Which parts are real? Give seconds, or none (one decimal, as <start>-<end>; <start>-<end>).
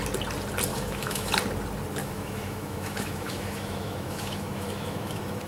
0.0-0.7; 1.3-2.0